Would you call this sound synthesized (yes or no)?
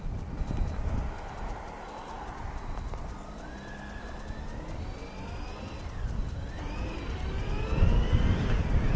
no